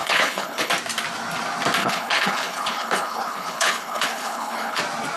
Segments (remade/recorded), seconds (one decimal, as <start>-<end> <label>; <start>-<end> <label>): 0.0-0.7 remade; 0.7-1.8 recorded; 1.8-4.8 remade; 4.8-5.2 recorded